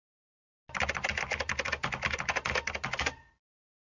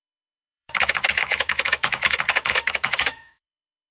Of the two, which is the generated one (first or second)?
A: second